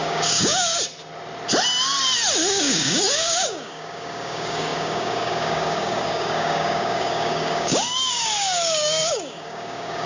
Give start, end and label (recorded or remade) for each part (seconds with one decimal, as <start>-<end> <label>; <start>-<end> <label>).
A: 0.0-0.7 remade; 0.7-2.5 recorded; 2.5-10.1 remade